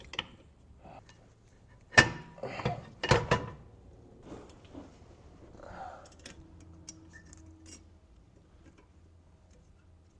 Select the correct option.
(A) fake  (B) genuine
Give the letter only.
B